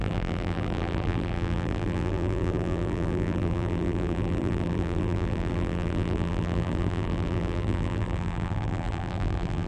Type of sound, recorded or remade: remade